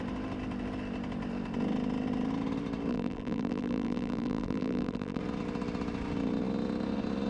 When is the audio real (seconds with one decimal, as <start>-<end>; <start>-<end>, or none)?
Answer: 0.0-2.9; 5.2-7.3

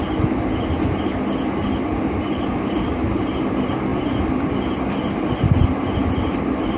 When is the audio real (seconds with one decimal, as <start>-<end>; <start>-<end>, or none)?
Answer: 0.0-1.6; 3.3-6.8

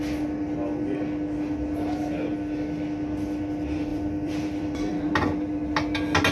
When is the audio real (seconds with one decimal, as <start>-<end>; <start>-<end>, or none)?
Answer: 0.0-3.9; 5.1-6.3